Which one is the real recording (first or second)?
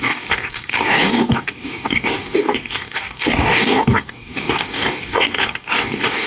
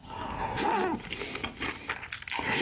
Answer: second